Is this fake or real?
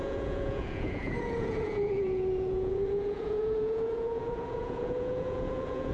fake